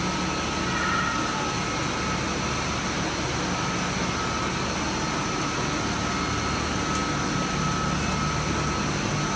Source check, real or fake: real